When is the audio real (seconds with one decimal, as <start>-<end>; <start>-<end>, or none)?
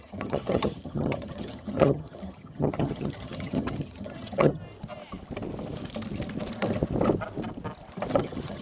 4.6-8.1